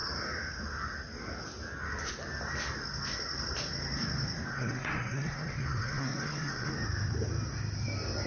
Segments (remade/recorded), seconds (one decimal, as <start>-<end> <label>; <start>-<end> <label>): 0.0-4.5 recorded; 4.5-6.7 remade; 6.7-8.3 recorded